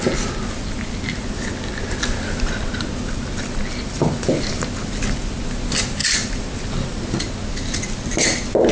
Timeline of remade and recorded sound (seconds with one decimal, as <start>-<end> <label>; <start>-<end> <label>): 0.0-8.7 recorded